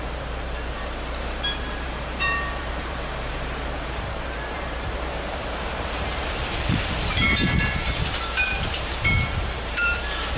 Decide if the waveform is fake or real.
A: fake